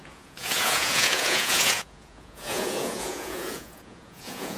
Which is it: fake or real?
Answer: fake